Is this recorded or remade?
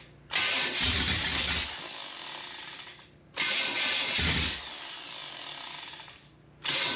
recorded